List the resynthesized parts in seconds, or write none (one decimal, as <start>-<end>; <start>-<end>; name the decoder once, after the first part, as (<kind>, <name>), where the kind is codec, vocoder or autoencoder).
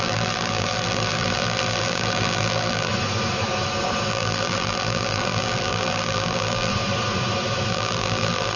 0.0-2.9 (vocoder, BigVGAN v2); 4.1-6.7; 7.7-8.6